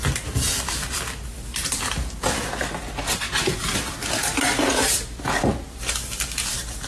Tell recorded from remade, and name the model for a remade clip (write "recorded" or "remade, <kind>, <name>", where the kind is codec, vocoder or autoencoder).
recorded